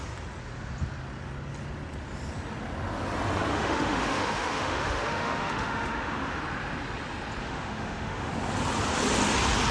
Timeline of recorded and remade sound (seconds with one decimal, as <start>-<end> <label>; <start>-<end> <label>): 0.0-3.5 recorded; 3.5-6.4 remade; 6.4-7.4 recorded; 7.4-8.3 remade; 8.3-9.7 recorded